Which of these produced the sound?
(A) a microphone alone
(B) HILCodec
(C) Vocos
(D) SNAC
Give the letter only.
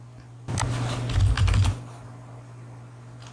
A